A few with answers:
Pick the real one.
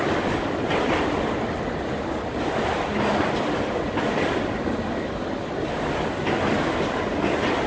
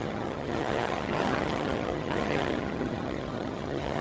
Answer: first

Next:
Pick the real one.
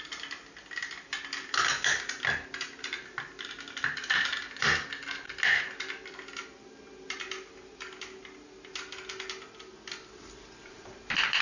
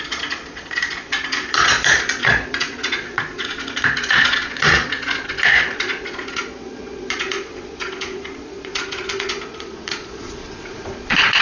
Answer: first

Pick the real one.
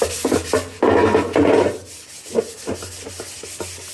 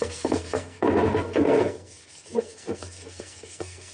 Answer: first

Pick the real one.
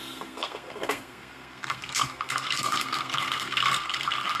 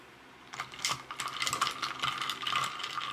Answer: second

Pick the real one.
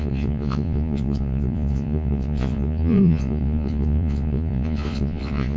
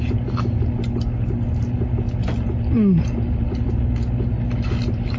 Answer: second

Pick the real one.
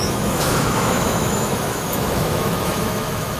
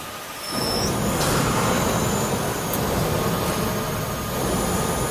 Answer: second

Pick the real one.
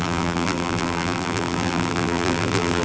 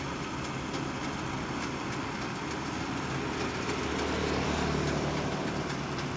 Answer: second